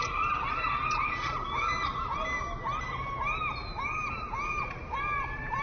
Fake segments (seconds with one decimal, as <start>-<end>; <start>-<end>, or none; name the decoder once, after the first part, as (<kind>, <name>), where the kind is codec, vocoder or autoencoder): none